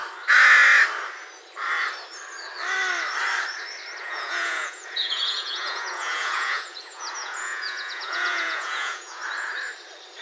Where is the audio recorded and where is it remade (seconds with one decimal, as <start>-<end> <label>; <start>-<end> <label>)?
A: 0.0-4.0 recorded; 4.0-9.2 remade; 9.2-10.2 recorded